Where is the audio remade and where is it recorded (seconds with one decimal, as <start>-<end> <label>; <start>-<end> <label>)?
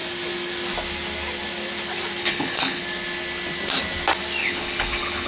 0.0-2.2 recorded; 2.2-2.8 remade; 2.8-4.4 recorded; 4.4-5.3 remade